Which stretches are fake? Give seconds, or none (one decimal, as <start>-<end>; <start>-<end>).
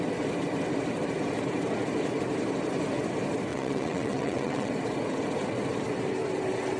3.5-4.7